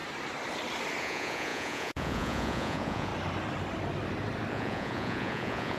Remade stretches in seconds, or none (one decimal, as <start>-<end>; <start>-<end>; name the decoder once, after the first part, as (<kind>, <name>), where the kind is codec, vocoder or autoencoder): 1.0-3.1 (vocoder, Vocos); 4.5-5.8